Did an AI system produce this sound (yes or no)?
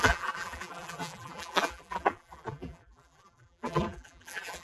yes